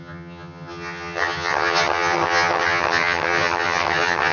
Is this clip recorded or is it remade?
remade